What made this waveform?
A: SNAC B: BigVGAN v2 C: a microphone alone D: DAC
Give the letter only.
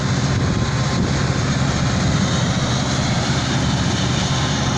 C